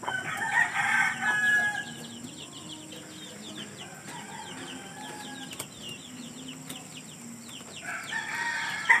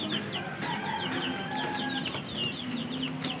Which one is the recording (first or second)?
second